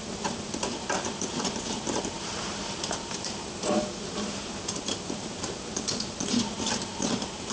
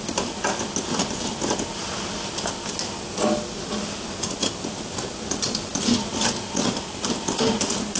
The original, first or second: second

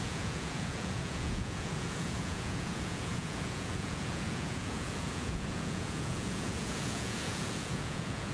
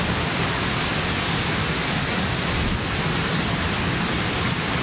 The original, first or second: second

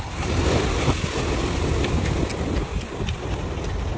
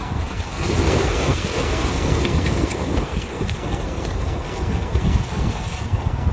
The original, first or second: first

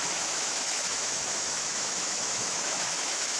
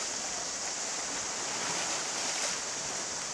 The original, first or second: second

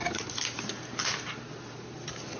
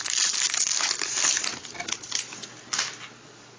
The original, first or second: second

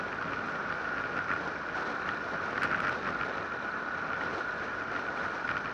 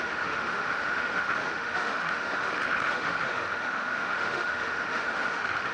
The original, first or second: first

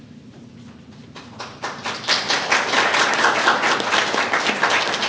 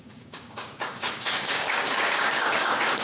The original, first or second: first